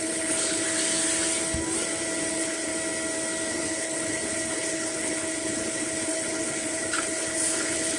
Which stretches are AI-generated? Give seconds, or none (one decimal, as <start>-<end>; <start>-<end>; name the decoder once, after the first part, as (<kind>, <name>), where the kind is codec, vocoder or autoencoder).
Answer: 0.0-0.6 (codec, HILCodec); 2.3-2.7; 3.5-8.0